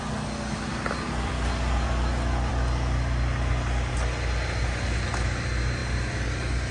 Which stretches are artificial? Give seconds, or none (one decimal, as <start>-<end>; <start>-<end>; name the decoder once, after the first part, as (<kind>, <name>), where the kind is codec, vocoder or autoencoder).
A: none